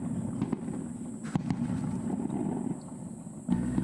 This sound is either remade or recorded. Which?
recorded